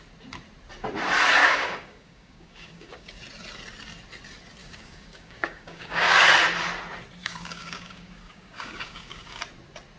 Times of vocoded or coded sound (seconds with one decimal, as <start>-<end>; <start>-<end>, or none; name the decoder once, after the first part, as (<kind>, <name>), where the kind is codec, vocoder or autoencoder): 1.4-3.2 (codec, DAC); 4.6-6.3; 7.2-9.4